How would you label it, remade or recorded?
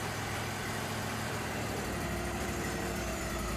remade